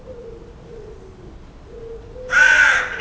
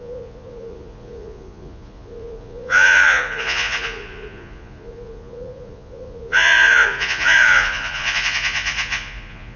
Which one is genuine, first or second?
first